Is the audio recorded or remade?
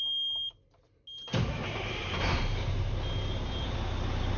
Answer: recorded